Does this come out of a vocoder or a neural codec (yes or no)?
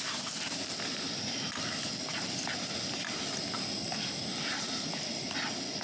no